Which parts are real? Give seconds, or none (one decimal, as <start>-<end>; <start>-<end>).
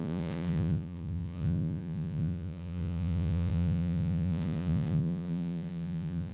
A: none